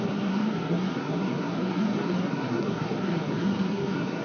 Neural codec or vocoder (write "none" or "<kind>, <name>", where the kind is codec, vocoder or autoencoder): codec, SNAC